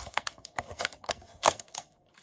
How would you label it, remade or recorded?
remade